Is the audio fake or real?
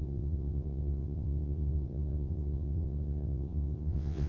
fake